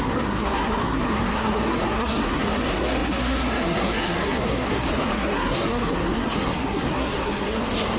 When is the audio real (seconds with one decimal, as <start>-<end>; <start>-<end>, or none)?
none